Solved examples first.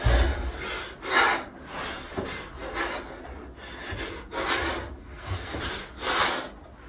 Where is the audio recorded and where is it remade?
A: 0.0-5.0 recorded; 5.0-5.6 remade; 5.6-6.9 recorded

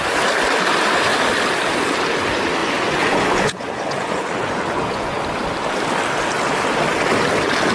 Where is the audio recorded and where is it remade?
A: 0.0-2.6 recorded; 2.6-5.2 remade; 5.2-7.7 recorded

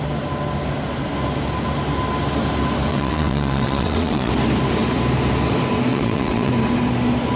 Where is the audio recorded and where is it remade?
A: 0.0-2.9 recorded; 2.9-4.3 remade; 4.3-5.9 recorded; 5.9-6.5 remade; 6.5-7.4 recorded

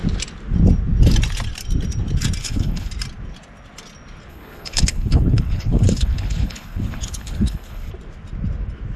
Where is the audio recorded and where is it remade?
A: 0.0-2.4 recorded; 2.4-2.9 remade; 2.9-4.3 recorded; 4.3-7.9 remade; 7.9-9.0 recorded

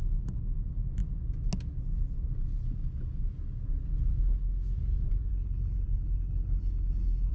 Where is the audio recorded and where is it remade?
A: 0.0-5.3 recorded; 5.3-7.3 remade